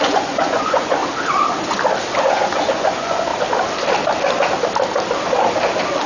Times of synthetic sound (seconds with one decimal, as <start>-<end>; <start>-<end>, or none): 0.0-1.0; 2.2-3.3